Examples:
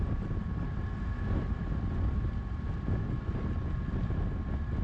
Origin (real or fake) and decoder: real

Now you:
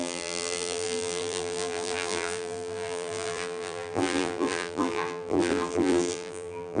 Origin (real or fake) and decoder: fake, vocoder, BigVGAN v2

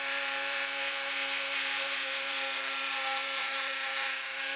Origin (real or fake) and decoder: fake, vocoder, BigVGAN v2